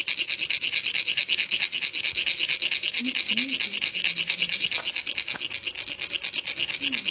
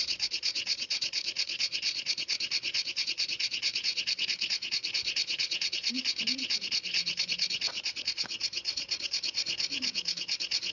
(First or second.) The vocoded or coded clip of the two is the second